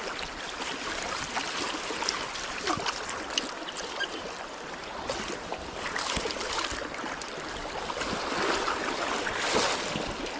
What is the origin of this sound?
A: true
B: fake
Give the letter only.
A